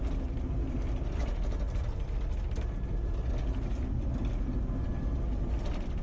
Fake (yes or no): no